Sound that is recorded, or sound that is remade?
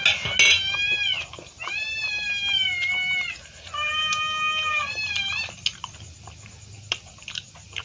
recorded